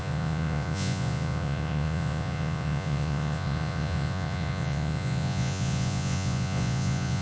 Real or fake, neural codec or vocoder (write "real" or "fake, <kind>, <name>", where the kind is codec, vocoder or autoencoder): fake, vocoder, Vocos